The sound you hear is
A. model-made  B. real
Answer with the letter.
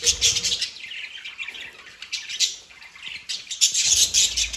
B